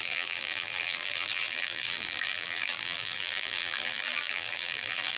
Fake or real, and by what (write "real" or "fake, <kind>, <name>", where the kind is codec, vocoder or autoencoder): fake, vocoder, BigVGAN v2